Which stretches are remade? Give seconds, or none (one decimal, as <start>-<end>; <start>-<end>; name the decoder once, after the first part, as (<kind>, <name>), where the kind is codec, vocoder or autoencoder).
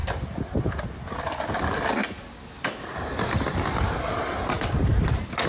none